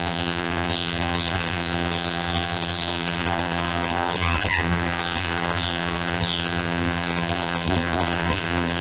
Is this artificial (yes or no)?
yes